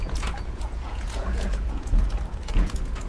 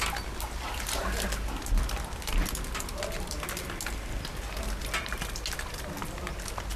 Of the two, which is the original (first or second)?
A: second